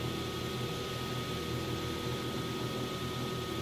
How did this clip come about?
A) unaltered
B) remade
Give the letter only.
A